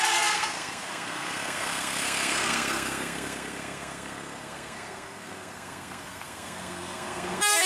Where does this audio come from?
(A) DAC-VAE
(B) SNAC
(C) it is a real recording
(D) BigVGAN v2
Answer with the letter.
B